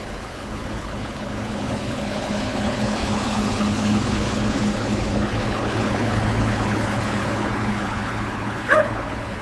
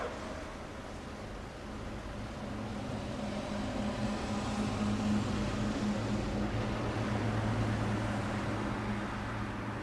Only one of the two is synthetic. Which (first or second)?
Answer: first